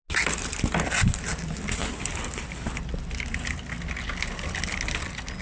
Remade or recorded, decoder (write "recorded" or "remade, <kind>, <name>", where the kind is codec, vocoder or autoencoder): recorded